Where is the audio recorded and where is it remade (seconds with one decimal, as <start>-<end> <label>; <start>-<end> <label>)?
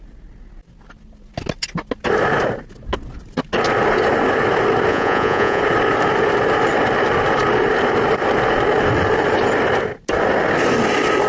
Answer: 0.0-4.9 recorded; 4.9-5.6 remade; 5.6-11.3 recorded